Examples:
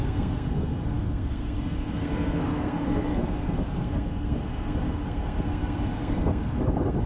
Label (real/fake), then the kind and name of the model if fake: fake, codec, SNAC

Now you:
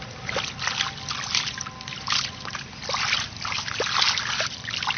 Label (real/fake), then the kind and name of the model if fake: real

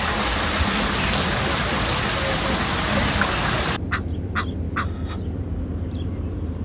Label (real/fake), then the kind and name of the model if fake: real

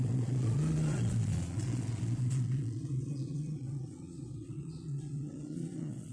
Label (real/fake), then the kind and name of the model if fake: fake, vocoder, Vocos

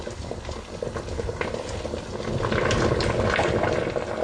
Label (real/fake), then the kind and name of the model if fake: real